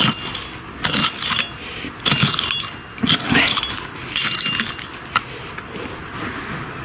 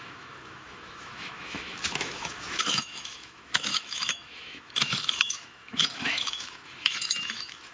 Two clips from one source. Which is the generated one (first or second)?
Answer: second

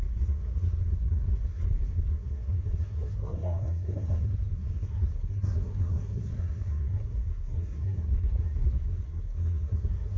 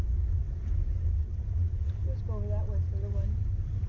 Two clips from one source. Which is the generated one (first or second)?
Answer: first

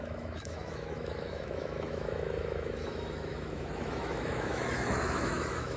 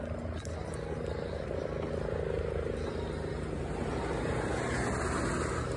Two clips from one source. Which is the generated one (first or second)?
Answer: first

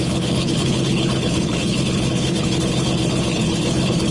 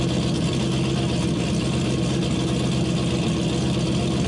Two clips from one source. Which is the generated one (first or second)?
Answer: first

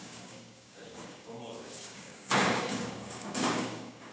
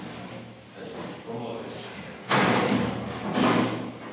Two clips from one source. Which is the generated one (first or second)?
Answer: first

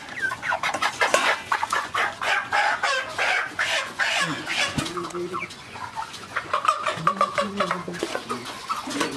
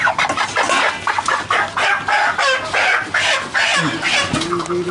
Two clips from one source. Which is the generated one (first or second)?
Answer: first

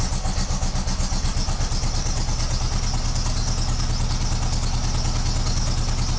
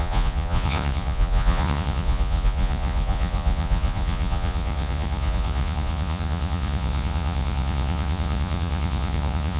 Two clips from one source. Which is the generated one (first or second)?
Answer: second